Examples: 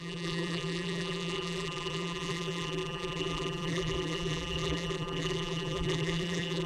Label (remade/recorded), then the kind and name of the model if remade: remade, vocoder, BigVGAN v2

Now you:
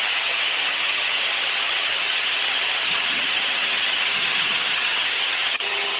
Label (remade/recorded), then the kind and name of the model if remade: remade, vocoder, HiFi-GAN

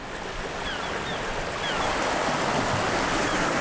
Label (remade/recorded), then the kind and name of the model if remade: recorded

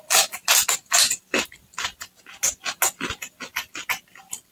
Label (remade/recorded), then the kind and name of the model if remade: recorded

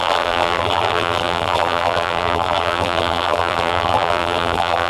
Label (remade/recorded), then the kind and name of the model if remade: remade, vocoder, BigVGAN v2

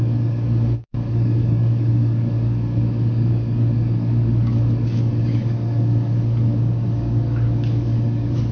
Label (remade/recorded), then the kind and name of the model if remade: remade, codec, DAC